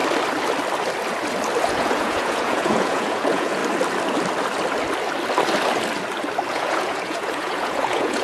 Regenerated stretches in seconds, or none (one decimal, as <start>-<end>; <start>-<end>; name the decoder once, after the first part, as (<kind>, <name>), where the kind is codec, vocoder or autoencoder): 1.6-3.6 (vocoder, Vocos); 6.5-8.2